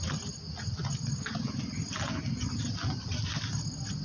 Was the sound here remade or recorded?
recorded